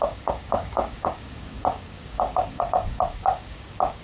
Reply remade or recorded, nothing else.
remade